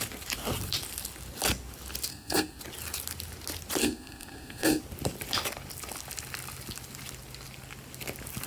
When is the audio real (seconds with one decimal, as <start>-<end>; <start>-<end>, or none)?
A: 0.0-2.1; 2.6-3.8; 4.8-8.5